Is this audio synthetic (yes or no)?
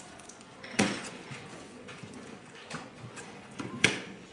yes